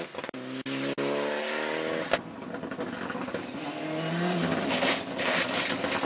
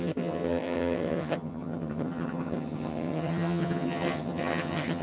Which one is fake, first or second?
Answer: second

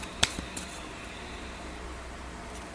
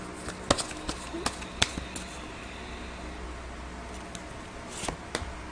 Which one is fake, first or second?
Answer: first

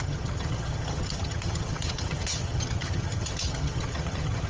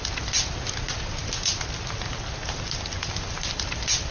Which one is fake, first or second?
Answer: first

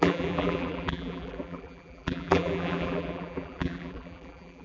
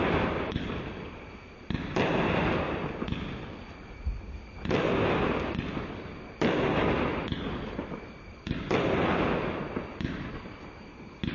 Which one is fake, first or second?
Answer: first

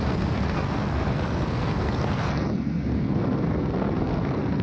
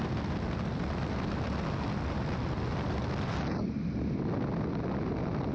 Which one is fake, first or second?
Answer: first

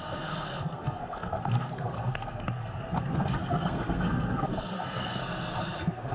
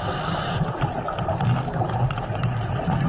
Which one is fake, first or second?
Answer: first